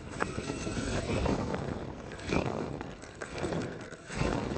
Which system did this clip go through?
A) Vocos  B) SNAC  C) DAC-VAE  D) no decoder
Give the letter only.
B